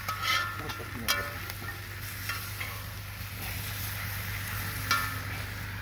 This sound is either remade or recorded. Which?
recorded